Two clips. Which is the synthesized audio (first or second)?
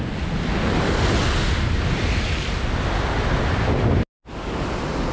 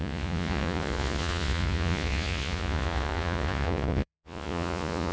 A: second